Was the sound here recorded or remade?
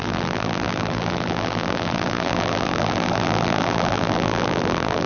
remade